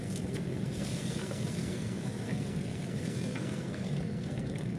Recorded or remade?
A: remade